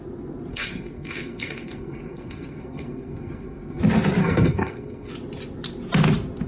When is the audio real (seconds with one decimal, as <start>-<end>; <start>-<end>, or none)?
0.0-0.5; 3.8-4.2; 5.1-6.5